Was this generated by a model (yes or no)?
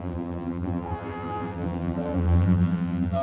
yes